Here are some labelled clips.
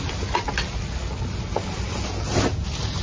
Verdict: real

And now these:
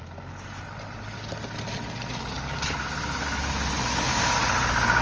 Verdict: real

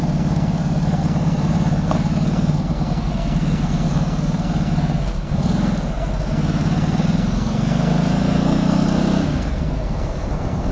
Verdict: fake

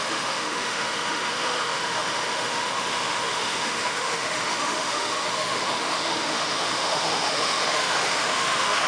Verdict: fake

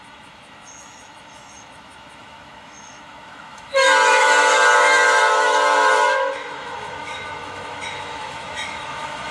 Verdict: fake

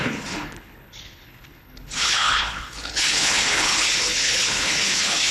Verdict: fake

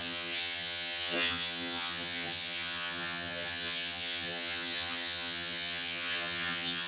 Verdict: fake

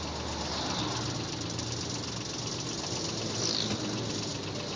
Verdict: real